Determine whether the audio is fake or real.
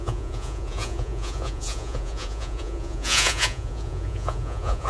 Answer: fake